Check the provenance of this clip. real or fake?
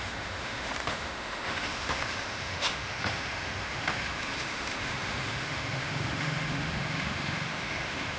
fake